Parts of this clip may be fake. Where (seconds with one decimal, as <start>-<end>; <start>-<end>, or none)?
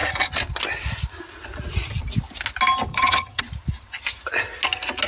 2.9-3.4